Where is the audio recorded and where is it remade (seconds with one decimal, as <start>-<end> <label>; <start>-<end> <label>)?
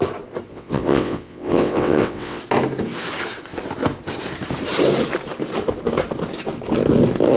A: 0.0-0.5 recorded; 0.5-2.4 remade; 2.4-7.4 recorded